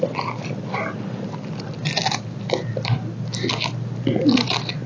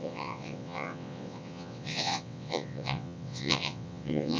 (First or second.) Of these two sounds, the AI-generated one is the second